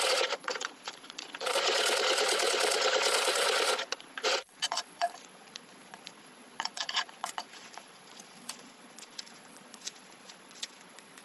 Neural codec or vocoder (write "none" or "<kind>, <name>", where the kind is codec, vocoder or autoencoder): vocoder, Vocos